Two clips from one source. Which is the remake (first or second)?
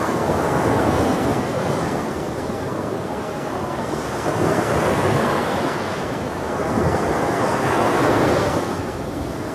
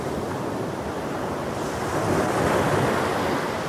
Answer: first